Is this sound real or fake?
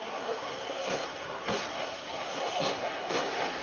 fake